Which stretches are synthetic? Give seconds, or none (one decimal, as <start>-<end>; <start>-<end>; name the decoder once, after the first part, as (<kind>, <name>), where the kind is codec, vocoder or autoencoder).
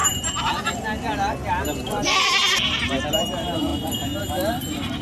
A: none